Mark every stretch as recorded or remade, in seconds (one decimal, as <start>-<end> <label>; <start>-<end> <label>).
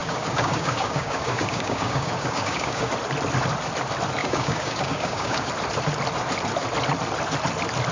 0.0-2.9 remade; 2.9-4.2 recorded; 4.2-5.5 remade; 5.5-7.9 recorded